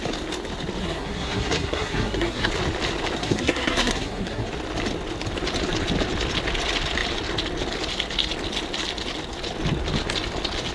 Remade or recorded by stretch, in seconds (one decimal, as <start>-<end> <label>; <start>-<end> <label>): 0.0-0.8 recorded; 0.8-2.5 remade; 2.5-3.2 recorded; 3.2-4.5 remade; 4.5-10.7 recorded